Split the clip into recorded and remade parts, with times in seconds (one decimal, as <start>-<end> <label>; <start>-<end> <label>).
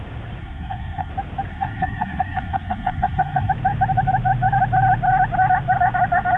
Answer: 0.0-0.4 recorded; 0.4-1.1 remade; 1.1-1.5 recorded; 1.5-3.5 remade; 3.5-6.4 recorded